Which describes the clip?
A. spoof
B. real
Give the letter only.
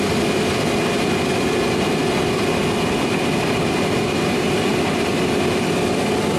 B